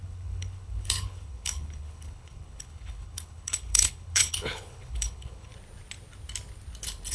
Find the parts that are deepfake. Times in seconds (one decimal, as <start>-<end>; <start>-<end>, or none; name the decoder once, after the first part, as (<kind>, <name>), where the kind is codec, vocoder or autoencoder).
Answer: 0.0-5.5 (codec, HILCodec)